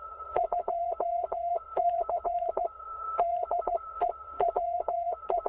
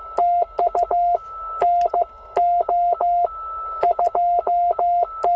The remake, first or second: first